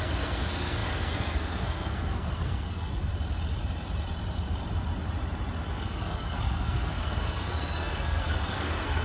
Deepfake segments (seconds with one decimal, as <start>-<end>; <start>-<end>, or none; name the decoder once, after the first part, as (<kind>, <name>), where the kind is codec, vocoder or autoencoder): 0.0-3.1 (codec, SNAC); 5.7-9.0